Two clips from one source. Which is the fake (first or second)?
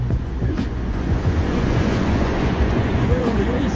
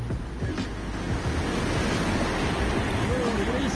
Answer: first